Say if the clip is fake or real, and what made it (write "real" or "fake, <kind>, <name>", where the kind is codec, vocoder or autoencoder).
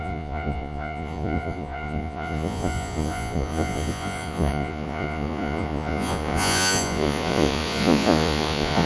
fake, vocoder, Vocos